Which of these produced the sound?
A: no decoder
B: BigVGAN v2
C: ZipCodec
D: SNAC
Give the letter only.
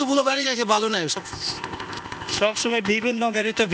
C